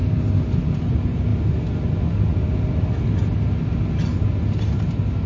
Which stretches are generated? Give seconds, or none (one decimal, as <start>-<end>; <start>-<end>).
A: none